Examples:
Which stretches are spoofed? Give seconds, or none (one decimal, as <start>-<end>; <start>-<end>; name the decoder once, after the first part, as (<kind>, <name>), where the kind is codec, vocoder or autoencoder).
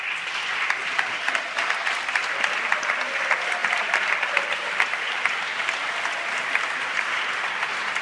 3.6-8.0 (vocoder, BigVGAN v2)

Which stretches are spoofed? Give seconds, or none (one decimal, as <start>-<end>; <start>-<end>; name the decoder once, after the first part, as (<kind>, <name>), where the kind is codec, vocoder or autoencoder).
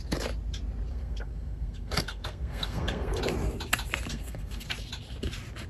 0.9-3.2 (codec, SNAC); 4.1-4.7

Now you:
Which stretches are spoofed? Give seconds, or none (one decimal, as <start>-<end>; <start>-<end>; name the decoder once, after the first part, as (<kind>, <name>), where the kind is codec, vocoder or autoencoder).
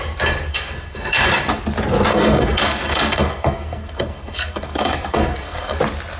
0.5-1.3 (codec, SNAC); 2.1-5.8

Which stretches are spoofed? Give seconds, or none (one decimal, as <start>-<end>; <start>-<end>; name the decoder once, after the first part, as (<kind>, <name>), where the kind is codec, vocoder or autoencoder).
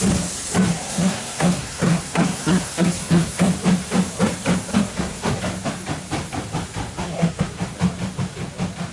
0.7-3.5 (codec, SNAC); 4.7-5.4; 7.0-7.6